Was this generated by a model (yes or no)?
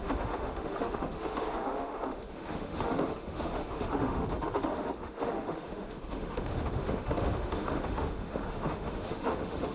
yes